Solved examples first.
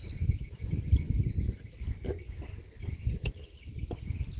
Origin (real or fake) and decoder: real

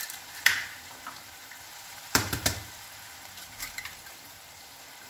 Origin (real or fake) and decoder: fake, vocoder, BigVGAN v2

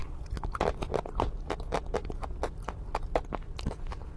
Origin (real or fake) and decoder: real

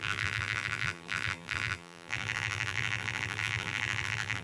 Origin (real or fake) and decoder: fake, vocoder, BigVGAN v2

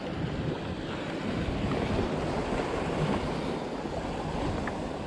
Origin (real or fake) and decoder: real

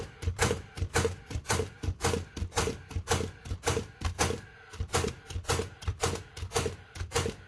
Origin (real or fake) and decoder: fake, vocoder, BigVGAN v2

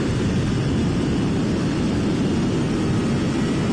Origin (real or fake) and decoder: fake, vocoder, BigVGAN v2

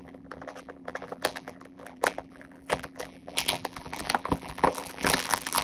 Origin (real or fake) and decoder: fake, vocoder, BigVGAN v2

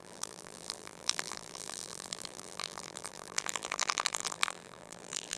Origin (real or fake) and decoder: fake, vocoder, BigVGAN v2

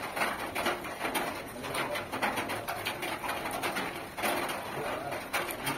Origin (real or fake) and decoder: real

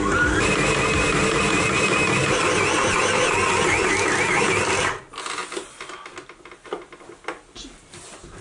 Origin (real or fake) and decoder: real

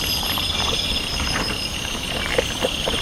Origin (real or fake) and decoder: fake, vocoder, BigVGAN v2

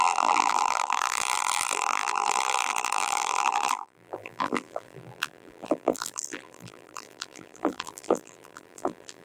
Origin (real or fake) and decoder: fake, vocoder, BigVGAN v2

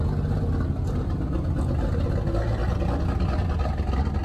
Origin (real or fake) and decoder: real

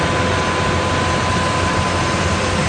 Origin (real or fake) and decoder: real